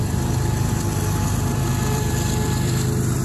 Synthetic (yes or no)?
yes